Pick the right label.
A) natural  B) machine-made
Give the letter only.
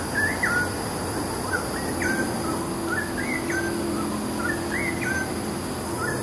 A